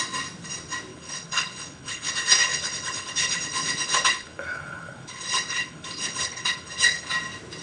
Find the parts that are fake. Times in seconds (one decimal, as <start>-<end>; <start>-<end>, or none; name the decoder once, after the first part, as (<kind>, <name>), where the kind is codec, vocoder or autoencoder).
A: 0.9-2.1 (codec, HILCodec); 2.5-7.1